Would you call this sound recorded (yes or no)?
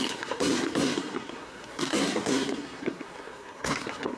no